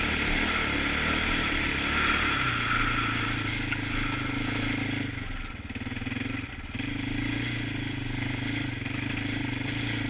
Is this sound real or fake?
real